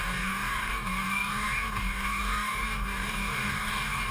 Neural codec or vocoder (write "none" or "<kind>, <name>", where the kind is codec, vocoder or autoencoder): codec, DAC